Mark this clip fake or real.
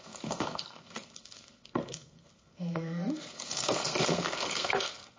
fake